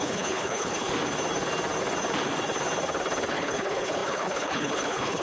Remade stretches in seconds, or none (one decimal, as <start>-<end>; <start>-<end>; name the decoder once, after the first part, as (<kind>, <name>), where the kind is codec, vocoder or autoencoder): 0.0-0.9 (codec, HILCodec); 3.3-5.2